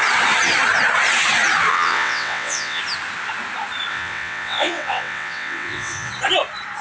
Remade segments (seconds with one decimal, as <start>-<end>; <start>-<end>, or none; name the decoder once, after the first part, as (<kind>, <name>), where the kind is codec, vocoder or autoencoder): 1.7-2.8 (vocoder, WaveNeXt); 3.9-6.1